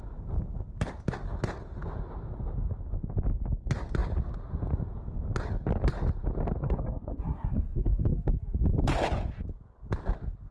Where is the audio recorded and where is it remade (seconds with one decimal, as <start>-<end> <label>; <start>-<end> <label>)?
0.0-6.6 recorded; 6.6-8.0 remade; 8.0-10.5 recorded